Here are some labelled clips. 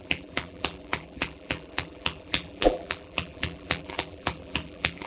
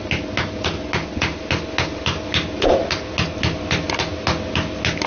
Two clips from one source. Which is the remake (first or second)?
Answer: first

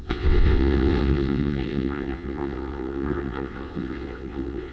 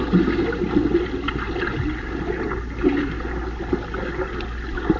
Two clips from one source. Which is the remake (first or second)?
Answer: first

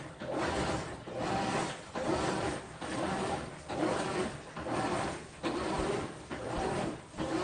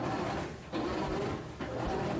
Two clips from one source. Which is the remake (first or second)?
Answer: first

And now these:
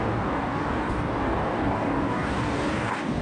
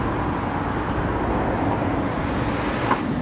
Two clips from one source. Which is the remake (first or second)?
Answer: first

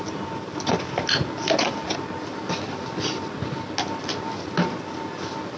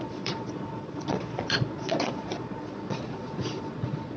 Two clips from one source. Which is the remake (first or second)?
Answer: second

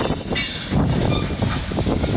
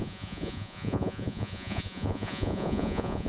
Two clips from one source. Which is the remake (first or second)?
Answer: second